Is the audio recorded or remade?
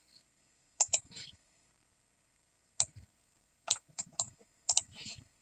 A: remade